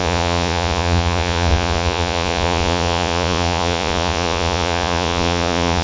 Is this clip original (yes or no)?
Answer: no